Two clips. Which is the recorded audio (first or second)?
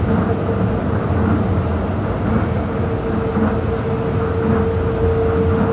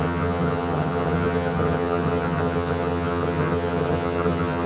first